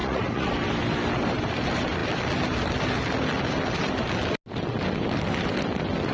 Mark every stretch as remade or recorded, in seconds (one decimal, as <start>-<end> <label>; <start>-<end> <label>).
0.0-0.5 remade; 0.5-6.1 recorded